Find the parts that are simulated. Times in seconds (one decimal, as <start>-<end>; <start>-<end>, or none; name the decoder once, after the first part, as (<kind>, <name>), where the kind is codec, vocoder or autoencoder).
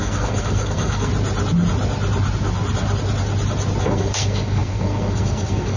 0.0-1.1 (codec, SNAC); 3.8-5.8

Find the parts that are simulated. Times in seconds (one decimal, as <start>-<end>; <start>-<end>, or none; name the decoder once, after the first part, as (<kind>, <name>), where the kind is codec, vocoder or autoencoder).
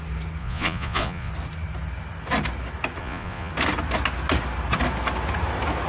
0.4-1.3 (vocoder, Vocos); 3.0-3.5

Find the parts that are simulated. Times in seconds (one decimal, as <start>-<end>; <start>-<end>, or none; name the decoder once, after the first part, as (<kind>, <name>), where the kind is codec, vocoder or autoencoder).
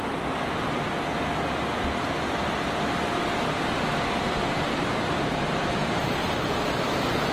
6.0-7.3 (vocoder, BigVGAN v2)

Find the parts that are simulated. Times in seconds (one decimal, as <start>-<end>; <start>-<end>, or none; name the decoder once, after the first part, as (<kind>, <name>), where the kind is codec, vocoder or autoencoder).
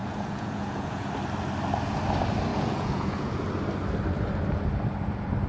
0.0-1.1 (vocoder, Vocos); 2.5-3.4